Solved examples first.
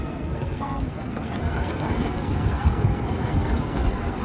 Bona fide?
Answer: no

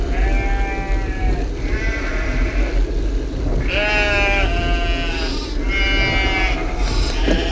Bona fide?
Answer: yes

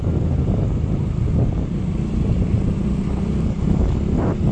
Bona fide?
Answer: yes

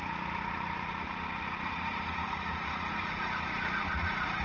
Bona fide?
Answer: no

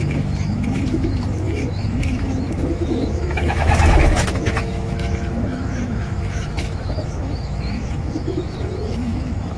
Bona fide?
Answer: no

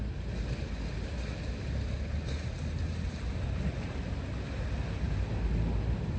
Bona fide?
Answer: yes